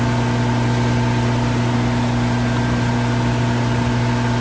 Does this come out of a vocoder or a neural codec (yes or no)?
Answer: no